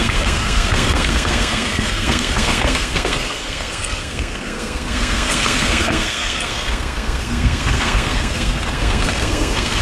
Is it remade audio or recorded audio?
remade